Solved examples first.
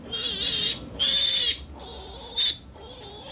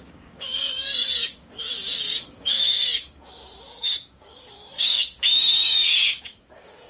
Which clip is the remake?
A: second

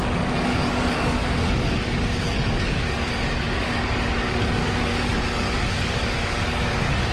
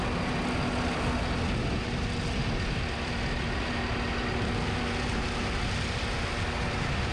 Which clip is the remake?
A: first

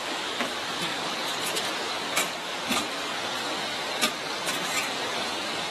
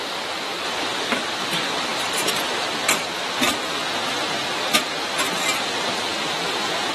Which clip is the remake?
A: first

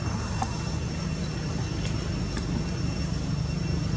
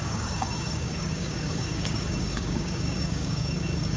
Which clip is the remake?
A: second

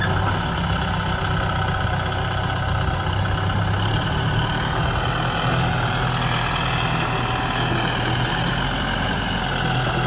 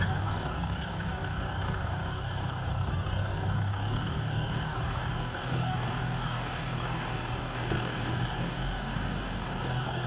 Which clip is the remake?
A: second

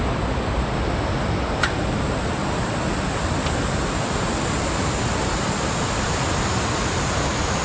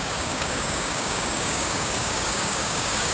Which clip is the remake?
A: second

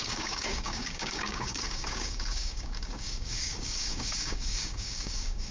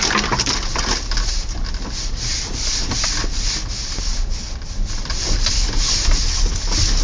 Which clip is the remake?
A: first